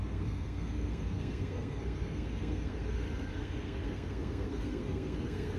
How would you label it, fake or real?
fake